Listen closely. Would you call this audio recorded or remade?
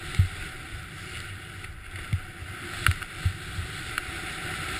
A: remade